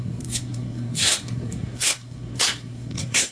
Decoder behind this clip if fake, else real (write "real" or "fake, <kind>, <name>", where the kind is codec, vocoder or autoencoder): fake, codec, SNAC